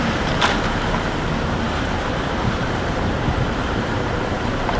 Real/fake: fake